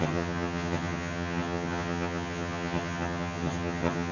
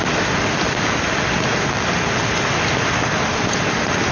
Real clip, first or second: second